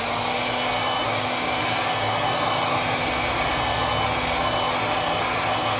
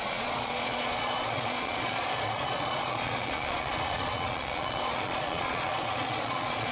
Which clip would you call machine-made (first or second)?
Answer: second